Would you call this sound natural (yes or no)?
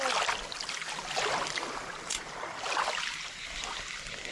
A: yes